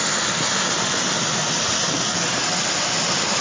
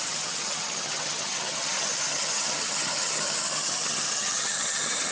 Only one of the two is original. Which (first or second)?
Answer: first